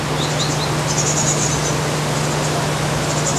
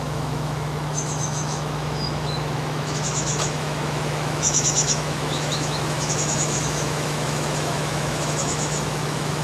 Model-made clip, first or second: second